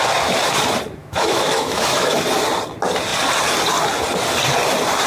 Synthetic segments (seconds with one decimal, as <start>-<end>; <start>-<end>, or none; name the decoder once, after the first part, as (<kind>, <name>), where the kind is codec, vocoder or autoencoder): 1.0-2.2 (autoencoder, DAC-VAE)